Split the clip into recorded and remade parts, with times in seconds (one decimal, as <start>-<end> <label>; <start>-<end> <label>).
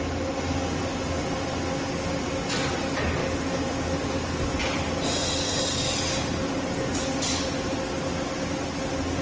0.0-4.6 recorded; 4.6-5.6 remade; 5.6-9.2 recorded